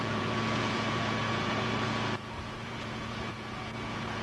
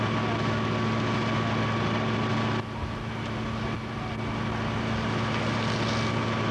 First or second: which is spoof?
first